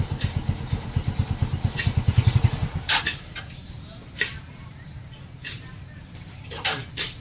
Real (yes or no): no